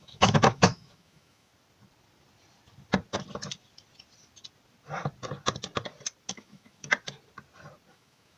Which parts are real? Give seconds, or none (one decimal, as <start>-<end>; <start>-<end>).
1.5-6.3; 6.9-7.9